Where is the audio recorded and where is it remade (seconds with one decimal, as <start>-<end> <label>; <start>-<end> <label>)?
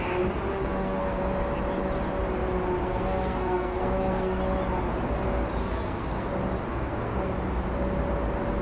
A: 0.0-0.5 recorded; 0.5-1.2 remade; 1.2-2.8 recorded; 2.8-4.4 remade; 4.4-5.6 recorded; 5.6-6.3 remade; 6.3-6.7 recorded; 6.7-7.3 remade; 7.3-8.6 recorded